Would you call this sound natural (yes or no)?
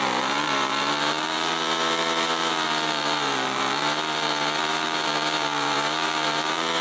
no